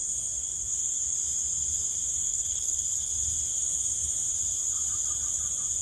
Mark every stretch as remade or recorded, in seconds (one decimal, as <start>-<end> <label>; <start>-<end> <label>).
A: 0.0-2.3 recorded; 2.3-3.1 remade; 3.1-5.8 recorded